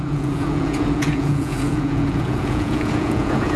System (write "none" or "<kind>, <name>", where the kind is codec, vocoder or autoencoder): vocoder, Vocos